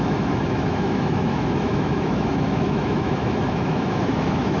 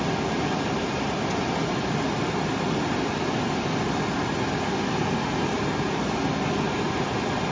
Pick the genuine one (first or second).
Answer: second